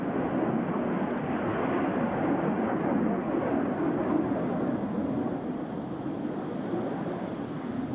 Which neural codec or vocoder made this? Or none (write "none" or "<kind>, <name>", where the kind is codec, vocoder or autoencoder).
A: none